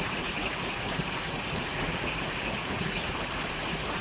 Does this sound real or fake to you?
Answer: fake